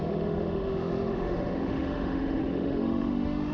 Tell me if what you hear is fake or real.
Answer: fake